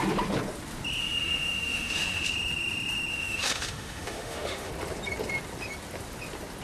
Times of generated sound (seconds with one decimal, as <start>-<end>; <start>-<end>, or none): 1.0-2.3; 3.1-4.7